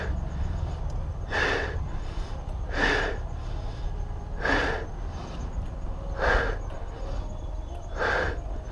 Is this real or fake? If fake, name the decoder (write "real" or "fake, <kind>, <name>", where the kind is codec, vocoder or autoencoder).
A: real